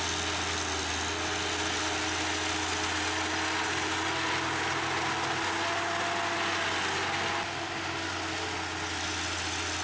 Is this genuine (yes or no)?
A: yes